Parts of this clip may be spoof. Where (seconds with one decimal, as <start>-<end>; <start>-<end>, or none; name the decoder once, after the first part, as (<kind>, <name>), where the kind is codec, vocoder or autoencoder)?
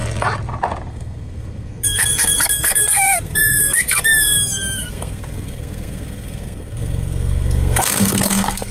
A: 0.9-8.7 (codec, SNAC)